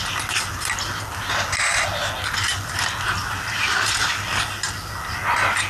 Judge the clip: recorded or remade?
recorded